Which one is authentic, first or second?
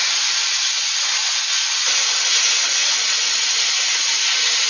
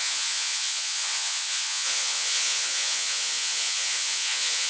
first